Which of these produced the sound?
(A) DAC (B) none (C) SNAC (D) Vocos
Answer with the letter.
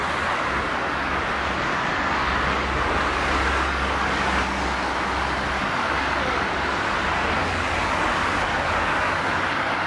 A